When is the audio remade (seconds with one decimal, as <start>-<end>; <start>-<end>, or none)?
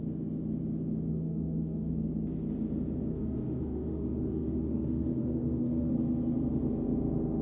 1.1-1.9; 3.1-5.9